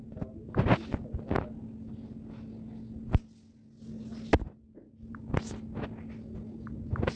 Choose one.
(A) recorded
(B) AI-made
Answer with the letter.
A